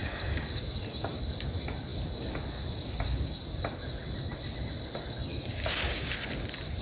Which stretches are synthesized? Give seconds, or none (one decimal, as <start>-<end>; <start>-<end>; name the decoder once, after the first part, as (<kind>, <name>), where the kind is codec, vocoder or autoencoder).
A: 0.0-0.6 (codec, DAC); 5.3-6.1

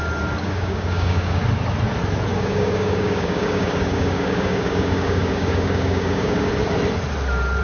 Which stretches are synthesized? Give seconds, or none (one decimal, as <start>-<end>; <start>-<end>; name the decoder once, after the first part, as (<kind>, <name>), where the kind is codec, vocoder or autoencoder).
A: 0.4-1.4 (codec, DAC); 2.3-6.5

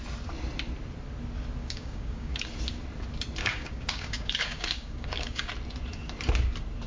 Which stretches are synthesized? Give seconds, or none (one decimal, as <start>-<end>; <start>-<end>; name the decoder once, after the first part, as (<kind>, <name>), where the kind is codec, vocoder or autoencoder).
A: 1.6-2.5 (codec, DAC); 3.4-5.5

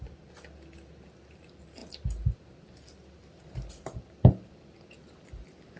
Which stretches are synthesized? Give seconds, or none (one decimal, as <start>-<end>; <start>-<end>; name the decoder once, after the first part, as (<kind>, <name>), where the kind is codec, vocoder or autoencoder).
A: none

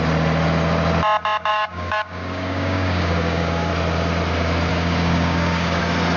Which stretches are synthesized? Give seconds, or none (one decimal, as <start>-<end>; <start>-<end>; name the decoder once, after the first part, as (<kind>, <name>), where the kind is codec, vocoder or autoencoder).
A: 1.5-3.7 (codec, DAC); 4.7-5.8

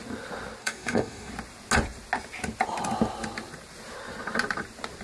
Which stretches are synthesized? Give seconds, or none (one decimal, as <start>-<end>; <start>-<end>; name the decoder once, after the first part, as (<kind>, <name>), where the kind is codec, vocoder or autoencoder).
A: 0.6-1.3 (codec, DAC)